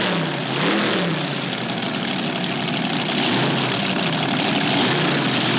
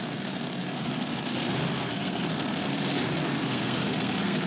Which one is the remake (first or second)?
second